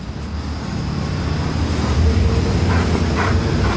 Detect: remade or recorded recorded